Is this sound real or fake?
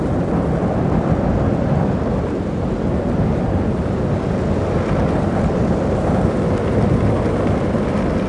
real